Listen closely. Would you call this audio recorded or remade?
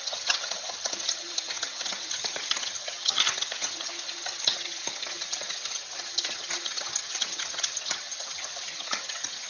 remade